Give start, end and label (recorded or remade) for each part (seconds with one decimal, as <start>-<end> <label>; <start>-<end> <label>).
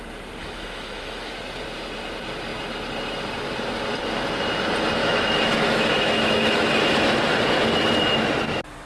0.0-0.4 recorded; 0.4-1.3 remade; 1.3-5.0 recorded; 5.0-6.7 remade; 6.7-8.9 recorded